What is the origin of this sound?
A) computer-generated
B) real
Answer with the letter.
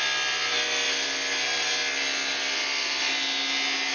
B